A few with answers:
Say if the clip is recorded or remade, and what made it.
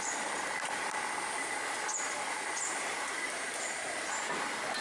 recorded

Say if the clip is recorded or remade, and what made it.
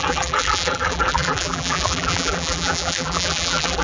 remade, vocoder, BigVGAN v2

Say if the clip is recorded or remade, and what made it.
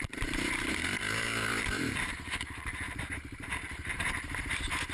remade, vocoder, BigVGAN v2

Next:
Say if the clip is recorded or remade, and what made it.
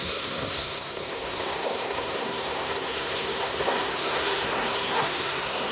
remade, codec, SNAC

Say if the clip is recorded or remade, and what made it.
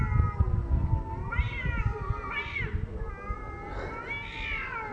recorded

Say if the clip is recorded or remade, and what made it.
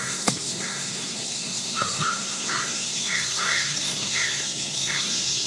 remade, codec, SNAC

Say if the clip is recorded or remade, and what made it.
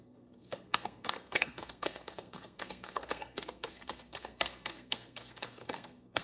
remade, codec, SNAC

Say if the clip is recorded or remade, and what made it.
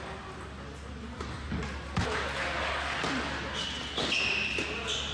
recorded